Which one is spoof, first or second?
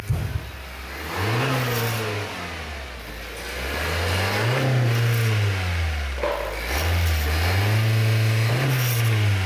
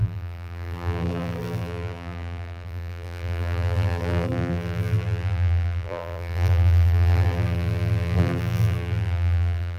second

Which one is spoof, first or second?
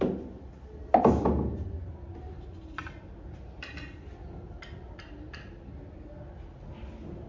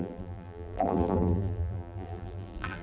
second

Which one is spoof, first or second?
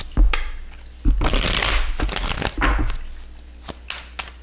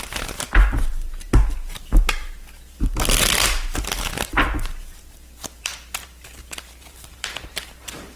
second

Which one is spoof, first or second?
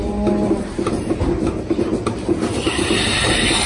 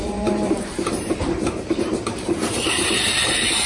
second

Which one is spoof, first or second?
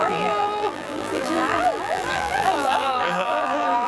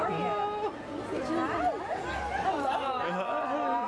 first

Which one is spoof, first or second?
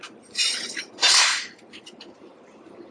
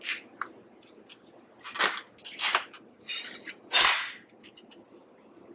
first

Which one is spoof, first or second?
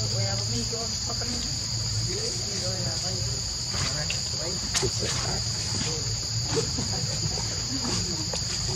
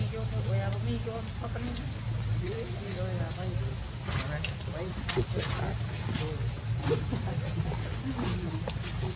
first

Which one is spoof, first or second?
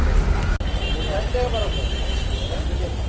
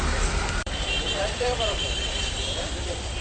second